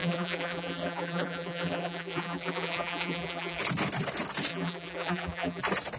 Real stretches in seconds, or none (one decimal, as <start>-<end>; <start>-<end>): 3.6-4.5; 5.6-6.0